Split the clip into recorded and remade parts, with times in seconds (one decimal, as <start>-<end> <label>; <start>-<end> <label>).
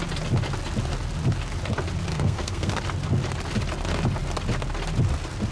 0.0-2.1 recorded; 2.1-2.8 remade; 2.8-5.5 recorded